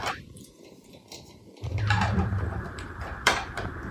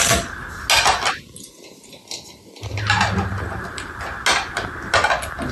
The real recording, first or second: second